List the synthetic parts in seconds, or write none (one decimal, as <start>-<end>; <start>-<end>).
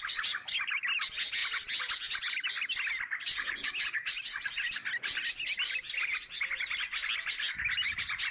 none